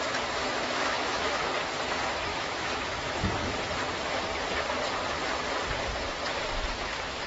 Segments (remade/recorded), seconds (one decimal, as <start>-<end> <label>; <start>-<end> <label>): 0.0-0.4 recorded; 0.4-1.5 remade; 1.5-2.3 recorded; 2.3-3.5 remade; 3.5-7.3 recorded